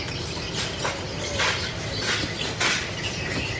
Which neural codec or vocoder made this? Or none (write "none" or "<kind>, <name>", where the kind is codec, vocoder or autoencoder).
none